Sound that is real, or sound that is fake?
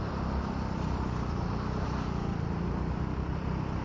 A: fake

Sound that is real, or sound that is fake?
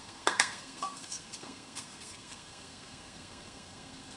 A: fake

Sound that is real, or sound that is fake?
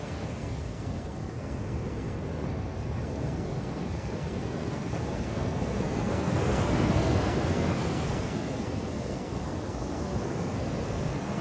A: fake